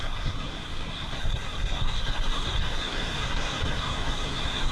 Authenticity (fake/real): fake